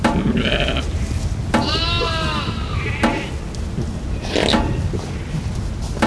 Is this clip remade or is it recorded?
recorded